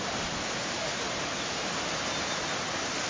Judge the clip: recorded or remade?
recorded